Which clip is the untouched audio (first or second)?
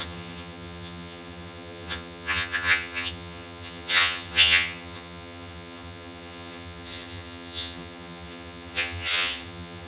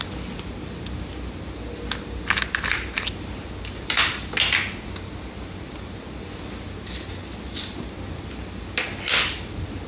second